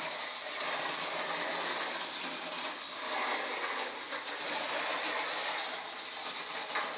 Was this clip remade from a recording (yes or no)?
no